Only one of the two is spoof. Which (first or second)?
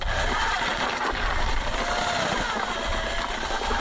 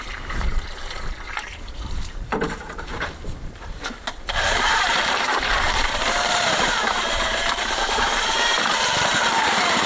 second